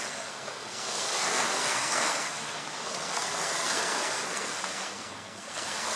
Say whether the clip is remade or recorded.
remade